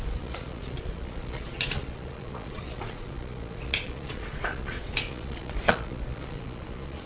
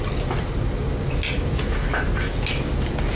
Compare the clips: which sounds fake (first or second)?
first